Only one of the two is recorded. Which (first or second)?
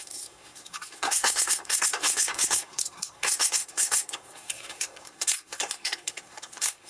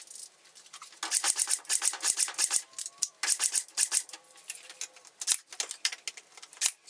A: second